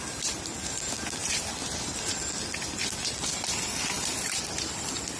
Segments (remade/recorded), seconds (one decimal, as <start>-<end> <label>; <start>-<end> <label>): 0.0-5.2 recorded